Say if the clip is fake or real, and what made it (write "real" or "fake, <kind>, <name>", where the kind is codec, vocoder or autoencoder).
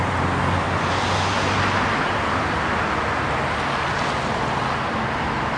real